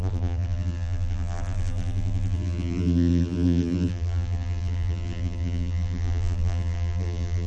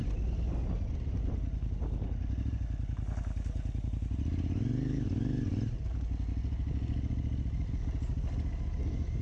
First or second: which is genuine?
second